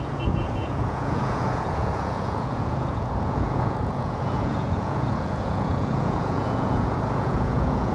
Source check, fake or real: fake